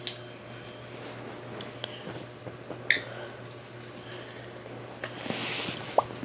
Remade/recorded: recorded